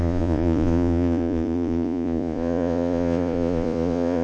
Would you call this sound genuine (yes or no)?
no